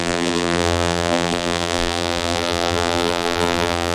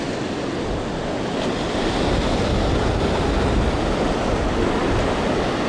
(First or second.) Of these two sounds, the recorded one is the second